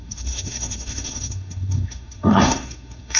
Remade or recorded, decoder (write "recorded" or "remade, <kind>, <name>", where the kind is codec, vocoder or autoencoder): remade, codec, SNAC